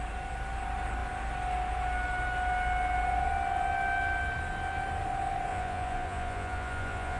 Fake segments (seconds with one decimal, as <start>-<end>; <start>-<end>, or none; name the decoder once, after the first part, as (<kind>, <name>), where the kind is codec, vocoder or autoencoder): 5.5-7.2 (vocoder, Vocos)